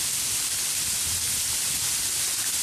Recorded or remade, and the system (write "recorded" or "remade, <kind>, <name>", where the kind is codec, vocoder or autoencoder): recorded